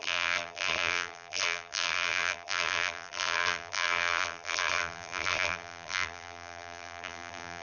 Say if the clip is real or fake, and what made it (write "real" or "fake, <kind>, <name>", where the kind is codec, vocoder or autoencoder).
fake, vocoder, BigVGAN v2